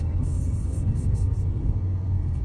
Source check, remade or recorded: remade